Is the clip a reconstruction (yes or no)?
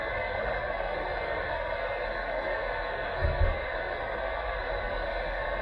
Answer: yes